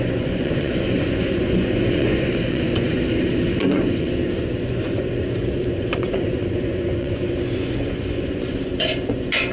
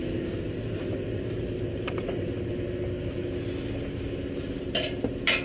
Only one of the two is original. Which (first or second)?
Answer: second